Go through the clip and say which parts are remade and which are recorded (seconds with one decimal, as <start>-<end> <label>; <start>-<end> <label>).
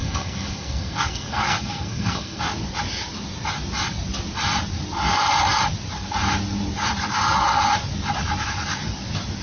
0.0-2.4 remade; 2.4-9.4 recorded